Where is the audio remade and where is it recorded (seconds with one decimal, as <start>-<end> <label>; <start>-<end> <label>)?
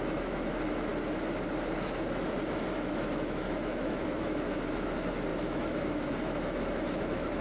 0.0-0.9 remade; 0.9-2.5 recorded; 2.5-7.4 remade